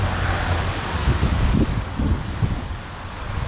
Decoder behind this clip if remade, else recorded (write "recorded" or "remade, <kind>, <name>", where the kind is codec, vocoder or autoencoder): remade, codec, DAC